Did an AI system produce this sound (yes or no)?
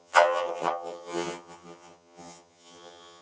yes